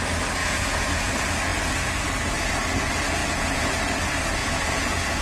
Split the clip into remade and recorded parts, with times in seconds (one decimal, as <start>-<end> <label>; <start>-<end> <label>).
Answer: 0.0-0.4 recorded; 0.4-1.1 remade; 1.1-3.2 recorded; 3.2-3.8 remade; 3.8-4.4 recorded; 4.4-5.2 remade